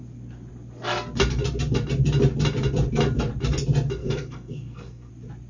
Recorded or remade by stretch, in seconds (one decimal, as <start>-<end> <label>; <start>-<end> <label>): 0.0-4.0 recorded; 4.0-5.1 remade; 5.1-5.5 recorded